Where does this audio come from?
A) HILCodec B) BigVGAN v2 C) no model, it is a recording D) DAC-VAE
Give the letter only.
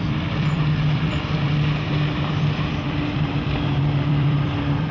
B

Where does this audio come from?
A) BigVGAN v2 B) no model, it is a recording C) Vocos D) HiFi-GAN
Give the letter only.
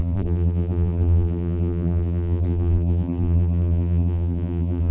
A